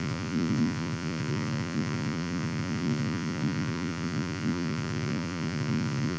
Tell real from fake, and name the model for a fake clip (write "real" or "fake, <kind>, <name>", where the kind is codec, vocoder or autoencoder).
fake, vocoder, Vocos